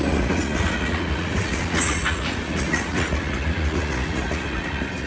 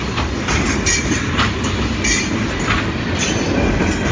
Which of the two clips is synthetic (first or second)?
first